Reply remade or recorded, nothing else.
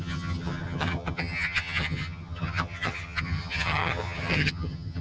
remade